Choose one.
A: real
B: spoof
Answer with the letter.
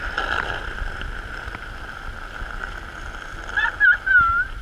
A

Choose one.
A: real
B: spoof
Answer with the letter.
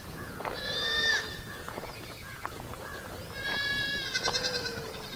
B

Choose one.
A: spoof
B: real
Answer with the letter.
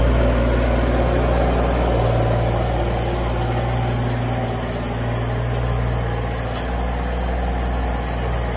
B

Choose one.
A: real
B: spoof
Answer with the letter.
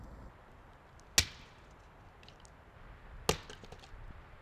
A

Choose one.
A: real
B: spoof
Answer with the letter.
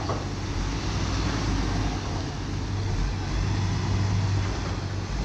A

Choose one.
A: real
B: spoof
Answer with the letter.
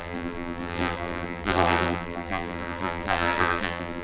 B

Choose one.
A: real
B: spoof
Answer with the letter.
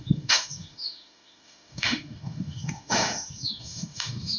B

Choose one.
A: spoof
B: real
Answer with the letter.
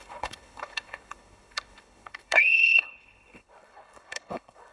A